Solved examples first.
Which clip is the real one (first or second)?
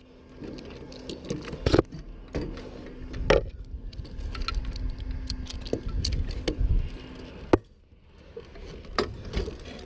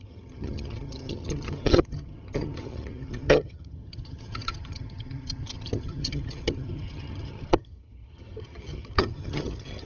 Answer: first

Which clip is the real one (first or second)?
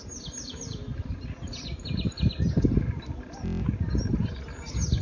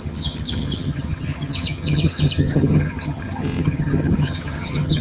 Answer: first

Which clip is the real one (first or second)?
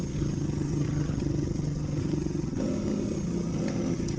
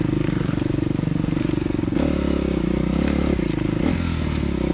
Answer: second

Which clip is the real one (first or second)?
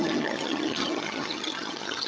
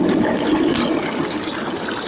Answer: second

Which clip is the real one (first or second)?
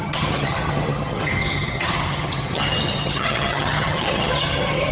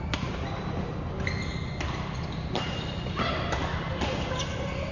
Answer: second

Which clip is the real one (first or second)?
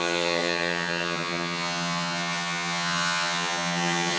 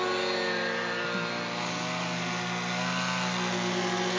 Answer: second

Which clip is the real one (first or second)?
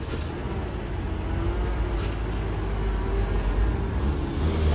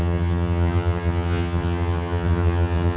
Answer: first